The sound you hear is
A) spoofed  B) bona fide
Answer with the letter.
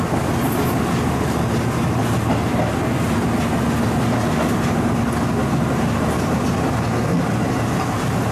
B